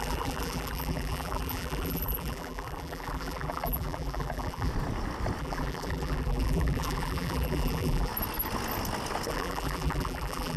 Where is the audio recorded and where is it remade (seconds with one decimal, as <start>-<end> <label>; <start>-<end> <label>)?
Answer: 0.0-4.7 remade; 4.7-5.4 recorded; 5.4-8.1 remade; 8.1-9.3 recorded; 9.3-10.6 remade